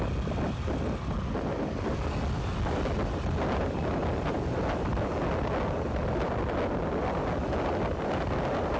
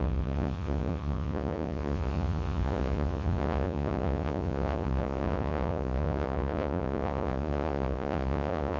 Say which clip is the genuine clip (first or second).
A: first